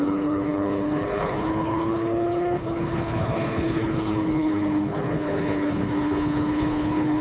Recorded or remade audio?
remade